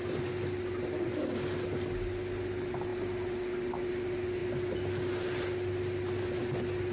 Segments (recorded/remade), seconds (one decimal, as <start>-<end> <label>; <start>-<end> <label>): 0.0-6.9 recorded